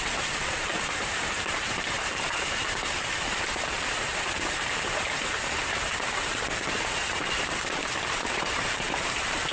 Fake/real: fake